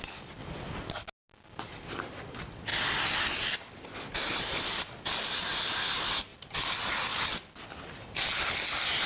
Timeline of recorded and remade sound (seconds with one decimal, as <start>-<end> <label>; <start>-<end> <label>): 0.0-6.3 recorded; 6.3-6.9 remade; 6.9-9.1 recorded